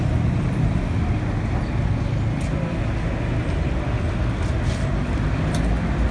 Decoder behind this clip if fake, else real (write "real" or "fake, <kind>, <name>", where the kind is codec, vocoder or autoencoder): real